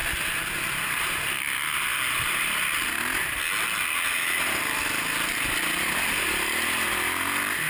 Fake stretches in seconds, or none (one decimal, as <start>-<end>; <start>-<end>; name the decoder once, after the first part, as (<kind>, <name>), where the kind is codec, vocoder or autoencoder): none